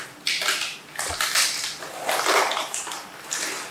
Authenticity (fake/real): real